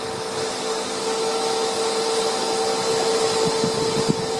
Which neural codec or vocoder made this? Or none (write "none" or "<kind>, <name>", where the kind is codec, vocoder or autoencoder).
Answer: none